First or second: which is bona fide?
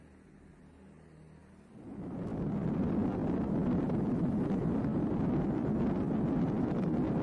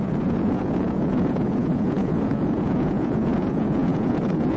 first